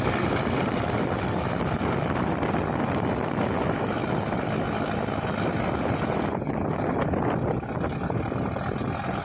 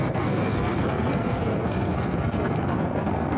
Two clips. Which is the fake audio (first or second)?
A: second